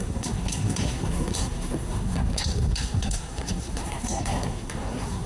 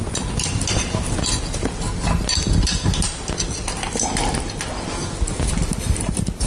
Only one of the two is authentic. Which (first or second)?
second